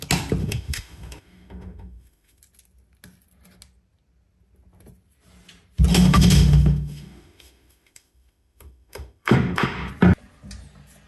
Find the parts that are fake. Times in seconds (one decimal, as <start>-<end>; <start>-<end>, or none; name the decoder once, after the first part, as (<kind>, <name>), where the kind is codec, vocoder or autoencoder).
0.4-2.4 (autoencoder, DAC-VAE); 5.9-9.9